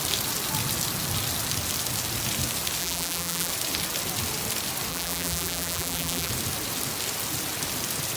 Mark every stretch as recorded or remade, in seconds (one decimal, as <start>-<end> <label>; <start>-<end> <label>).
0.0-2.8 recorded; 2.8-3.5 remade; 3.5-4.9 recorded; 4.9-6.3 remade; 6.3-8.2 recorded